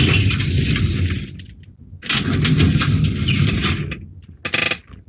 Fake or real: real